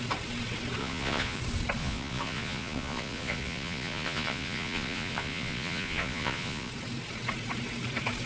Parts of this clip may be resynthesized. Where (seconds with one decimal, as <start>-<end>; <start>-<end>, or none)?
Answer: 0.8-1.4; 1.8-6.7